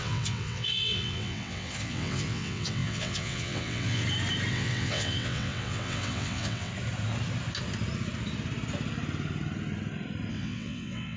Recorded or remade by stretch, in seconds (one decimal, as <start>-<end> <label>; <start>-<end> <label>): 0.0-4.0 remade; 4.0-4.5 recorded; 4.5-6.7 remade; 6.7-10.3 recorded; 10.3-11.2 remade